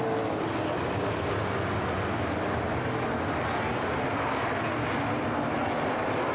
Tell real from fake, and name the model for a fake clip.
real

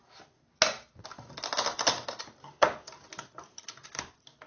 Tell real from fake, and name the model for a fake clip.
real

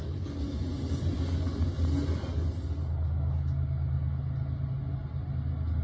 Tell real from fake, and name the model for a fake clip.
real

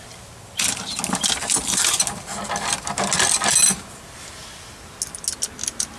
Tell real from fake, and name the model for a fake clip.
real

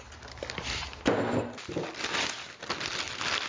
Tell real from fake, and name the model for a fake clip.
real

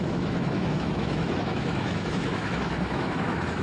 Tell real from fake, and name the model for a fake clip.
fake, autoencoder, DAC-VAE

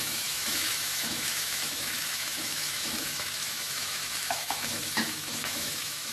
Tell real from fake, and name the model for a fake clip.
fake, autoencoder, DAC-VAE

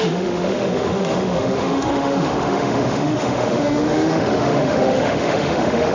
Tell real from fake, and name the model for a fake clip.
fake, autoencoder, DAC-VAE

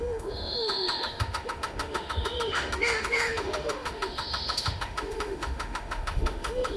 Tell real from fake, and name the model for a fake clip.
fake, autoencoder, DAC-VAE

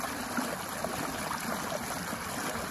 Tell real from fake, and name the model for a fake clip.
real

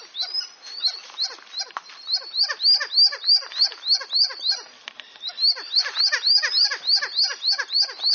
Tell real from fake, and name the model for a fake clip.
real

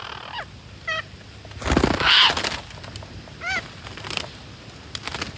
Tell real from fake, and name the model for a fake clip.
real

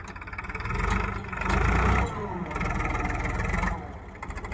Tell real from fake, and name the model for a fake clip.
real